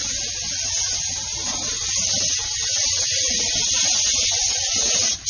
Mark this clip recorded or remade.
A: recorded